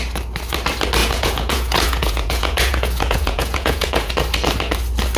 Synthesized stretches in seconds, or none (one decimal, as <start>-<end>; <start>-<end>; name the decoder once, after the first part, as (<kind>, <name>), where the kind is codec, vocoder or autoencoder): 1.0-4.1 (vocoder, Vocos)